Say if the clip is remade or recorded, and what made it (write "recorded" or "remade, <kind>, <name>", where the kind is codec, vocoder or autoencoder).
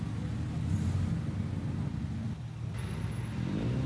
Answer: recorded